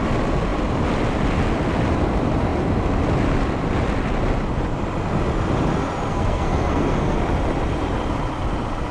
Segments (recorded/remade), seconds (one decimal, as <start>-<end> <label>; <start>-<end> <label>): 0.0-6.1 recorded; 6.1-7.2 remade; 7.2-8.9 recorded